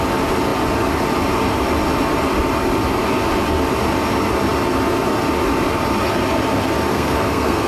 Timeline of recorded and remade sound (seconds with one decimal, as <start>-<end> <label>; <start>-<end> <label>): 0.0-6.9 recorded; 6.9-7.7 remade